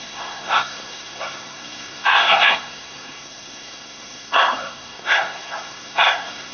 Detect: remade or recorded remade